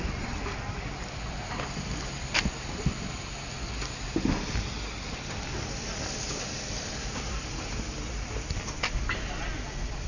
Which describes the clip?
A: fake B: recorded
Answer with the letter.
B